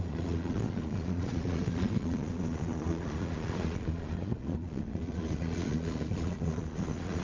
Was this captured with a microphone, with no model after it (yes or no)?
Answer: no